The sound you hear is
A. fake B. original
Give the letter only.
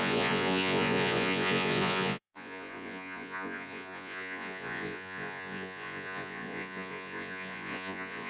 A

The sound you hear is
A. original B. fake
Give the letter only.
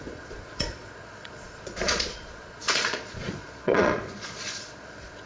B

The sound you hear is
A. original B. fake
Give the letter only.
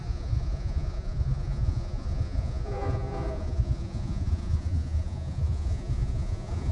B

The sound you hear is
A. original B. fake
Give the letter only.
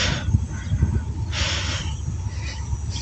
A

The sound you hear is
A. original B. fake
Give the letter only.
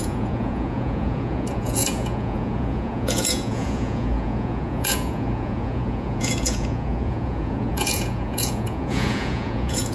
B